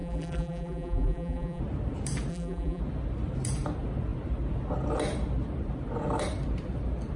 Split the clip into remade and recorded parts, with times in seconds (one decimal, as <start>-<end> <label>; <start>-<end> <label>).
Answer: 0.0-1.6 remade; 1.6-2.3 recorded; 2.3-2.8 remade; 2.8-7.2 recorded

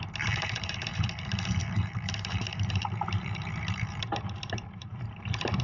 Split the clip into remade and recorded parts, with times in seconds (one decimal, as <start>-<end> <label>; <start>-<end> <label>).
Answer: 0.0-5.6 remade

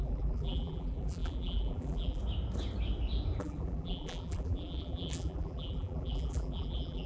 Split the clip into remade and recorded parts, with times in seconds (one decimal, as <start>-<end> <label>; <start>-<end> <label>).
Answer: 0.0-2.2 remade; 2.2-3.4 recorded; 3.4-7.1 remade

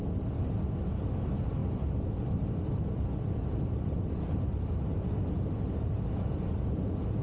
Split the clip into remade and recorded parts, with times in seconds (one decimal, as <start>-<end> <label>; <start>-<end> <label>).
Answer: 0.0-7.2 recorded

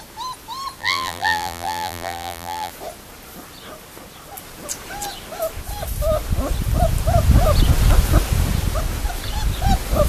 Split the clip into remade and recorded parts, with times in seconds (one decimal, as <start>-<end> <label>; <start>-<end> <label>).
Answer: 0.0-0.8 recorded; 0.8-2.7 remade; 2.7-10.1 recorded